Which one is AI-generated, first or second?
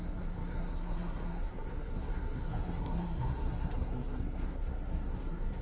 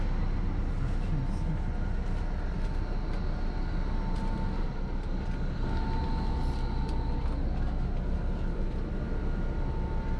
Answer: first